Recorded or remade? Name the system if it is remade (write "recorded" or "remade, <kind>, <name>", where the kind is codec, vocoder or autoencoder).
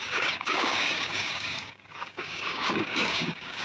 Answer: remade, codec, DAC